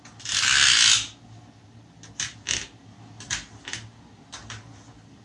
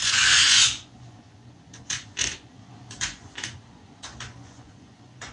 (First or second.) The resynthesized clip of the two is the second